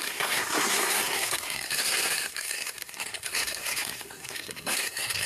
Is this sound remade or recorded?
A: remade